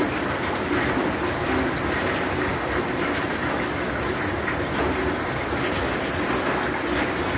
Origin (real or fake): real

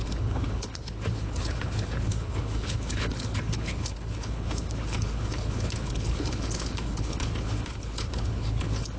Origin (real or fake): fake